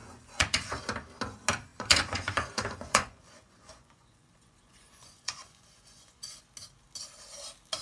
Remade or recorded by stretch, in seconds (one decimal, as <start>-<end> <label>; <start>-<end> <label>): 0.0-0.8 remade; 0.8-1.7 recorded; 1.7-6.4 remade; 6.4-7.8 recorded